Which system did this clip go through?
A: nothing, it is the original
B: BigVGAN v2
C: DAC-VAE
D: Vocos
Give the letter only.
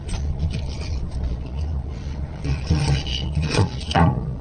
D